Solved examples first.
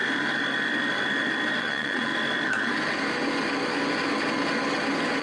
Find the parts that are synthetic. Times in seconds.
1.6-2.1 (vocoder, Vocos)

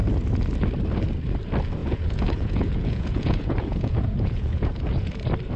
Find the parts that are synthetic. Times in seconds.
1.8-5.1 (vocoder, Vocos)

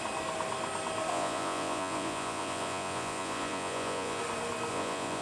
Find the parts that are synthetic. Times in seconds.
1.1-4.2 (vocoder, Vocos); 4.7-5.2

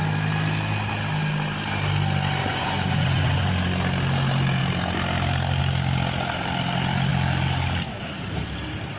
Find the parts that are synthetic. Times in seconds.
2.4-3.5 (vocoder, Vocos)